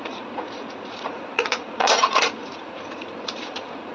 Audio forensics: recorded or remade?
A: remade